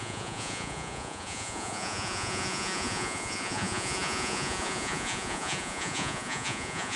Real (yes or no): no